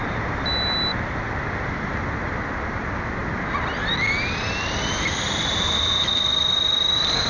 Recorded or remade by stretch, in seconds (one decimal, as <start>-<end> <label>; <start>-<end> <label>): 0.0-7.3 recorded

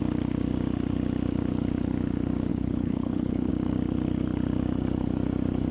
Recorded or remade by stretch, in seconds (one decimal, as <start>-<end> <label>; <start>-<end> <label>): 0.0-2.5 recorded; 2.5-3.5 remade; 3.5-5.7 recorded